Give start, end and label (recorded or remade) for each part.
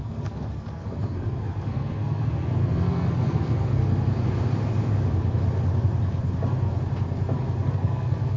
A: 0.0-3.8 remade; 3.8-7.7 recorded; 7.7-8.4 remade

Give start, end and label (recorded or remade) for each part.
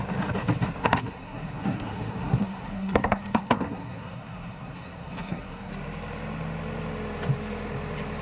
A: 0.0-0.8 recorded; 0.8-5.7 remade; 5.7-8.2 recorded